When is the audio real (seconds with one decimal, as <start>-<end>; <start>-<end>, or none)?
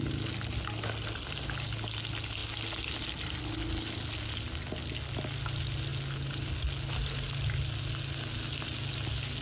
0.0-9.4